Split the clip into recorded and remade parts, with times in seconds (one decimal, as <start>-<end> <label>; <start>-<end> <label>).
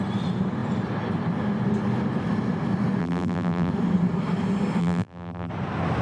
0.0-3.0 recorded; 3.0-3.7 remade; 3.7-4.8 recorded; 4.8-5.5 remade; 5.5-6.0 recorded